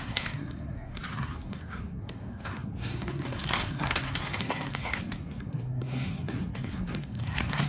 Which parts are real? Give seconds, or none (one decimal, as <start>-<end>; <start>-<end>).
none